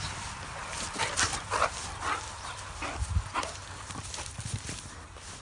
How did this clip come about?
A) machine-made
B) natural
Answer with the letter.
B